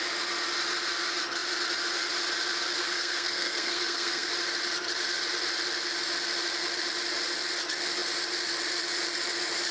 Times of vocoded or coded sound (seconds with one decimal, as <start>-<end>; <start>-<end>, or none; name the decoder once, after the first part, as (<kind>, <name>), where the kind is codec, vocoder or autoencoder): 2.8-4.3 (codec, SNAC)